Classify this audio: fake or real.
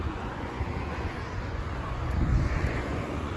fake